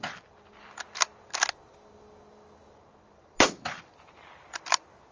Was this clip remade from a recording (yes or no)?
no